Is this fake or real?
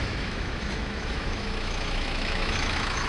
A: fake